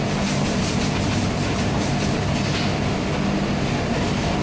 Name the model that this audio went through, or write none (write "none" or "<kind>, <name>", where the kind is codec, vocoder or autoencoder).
none